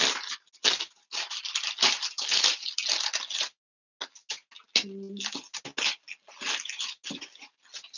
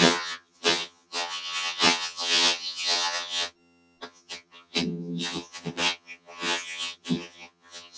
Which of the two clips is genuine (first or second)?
first